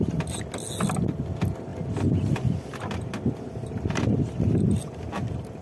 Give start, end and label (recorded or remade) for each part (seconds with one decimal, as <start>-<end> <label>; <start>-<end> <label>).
0.0-5.6 recorded